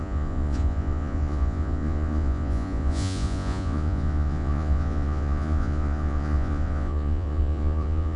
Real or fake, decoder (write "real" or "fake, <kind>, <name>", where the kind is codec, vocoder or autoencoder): fake, vocoder, Vocos